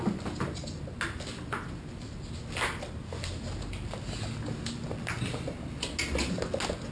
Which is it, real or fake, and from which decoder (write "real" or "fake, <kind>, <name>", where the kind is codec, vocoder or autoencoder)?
real